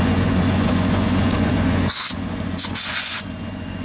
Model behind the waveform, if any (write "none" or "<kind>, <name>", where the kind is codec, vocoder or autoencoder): vocoder, Vocos